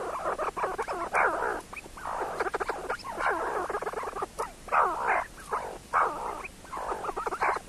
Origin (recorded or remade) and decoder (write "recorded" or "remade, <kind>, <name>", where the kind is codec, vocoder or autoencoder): recorded